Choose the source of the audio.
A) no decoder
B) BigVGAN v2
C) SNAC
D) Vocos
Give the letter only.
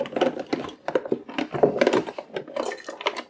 A